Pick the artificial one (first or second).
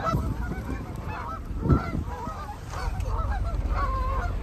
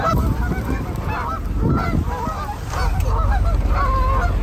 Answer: first